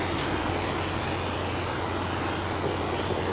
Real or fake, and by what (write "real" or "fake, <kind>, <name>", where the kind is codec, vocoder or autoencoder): real